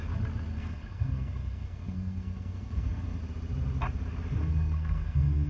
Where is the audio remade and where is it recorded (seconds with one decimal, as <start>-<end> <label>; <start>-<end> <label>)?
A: 0.0-0.5 recorded; 0.5-3.2 remade; 3.2-4.4 recorded; 4.4-5.5 remade